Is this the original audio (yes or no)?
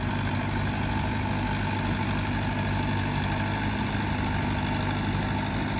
yes